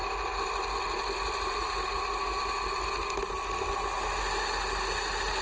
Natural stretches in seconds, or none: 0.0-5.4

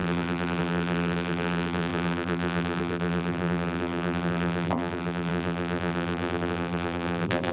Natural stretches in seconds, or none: none